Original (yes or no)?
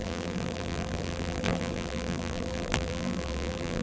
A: no